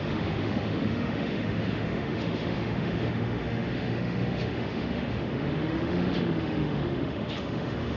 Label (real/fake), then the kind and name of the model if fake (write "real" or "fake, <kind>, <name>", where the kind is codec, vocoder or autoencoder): fake, autoencoder, DAC-VAE